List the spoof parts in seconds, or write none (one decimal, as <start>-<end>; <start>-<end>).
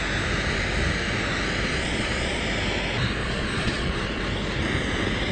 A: 1.7-2.4; 3.2-4.2